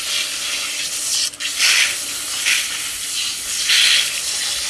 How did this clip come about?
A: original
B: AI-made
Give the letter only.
A